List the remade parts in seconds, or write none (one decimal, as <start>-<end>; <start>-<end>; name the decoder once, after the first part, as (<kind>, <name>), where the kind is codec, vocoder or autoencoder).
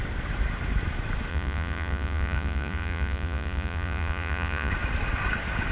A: 1.3-4.7 (vocoder, Vocos)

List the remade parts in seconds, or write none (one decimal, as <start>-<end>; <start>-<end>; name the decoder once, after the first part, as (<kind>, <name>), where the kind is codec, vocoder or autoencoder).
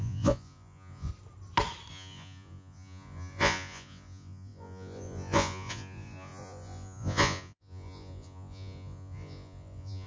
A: 0.0-1.1 (vocoder, Vocos); 1.9-10.1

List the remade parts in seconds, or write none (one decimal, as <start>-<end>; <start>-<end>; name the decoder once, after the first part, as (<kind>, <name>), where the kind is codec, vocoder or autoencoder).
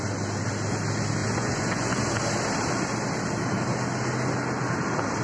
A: 1.2-2.0 (vocoder, Vocos)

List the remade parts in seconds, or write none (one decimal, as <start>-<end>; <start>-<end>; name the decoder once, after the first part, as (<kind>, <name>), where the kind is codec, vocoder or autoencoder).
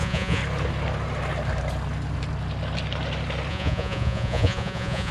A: 0.0-0.4 (vocoder, Vocos); 3.5-5.1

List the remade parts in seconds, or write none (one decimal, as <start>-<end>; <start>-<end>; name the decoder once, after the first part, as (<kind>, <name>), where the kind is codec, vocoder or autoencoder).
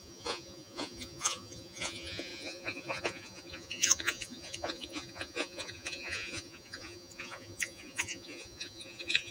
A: 0.0-9.3 (vocoder, Vocos)